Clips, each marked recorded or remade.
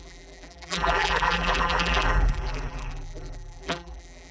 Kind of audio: remade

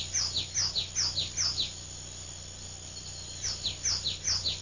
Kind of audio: recorded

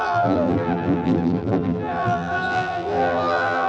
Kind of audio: remade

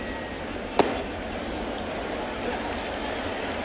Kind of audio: recorded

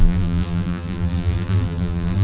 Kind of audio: remade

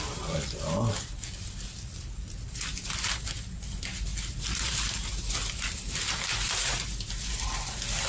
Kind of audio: recorded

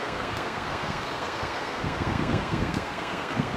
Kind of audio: remade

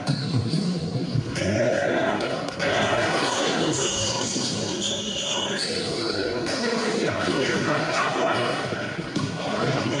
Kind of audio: remade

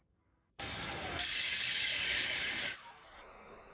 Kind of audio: remade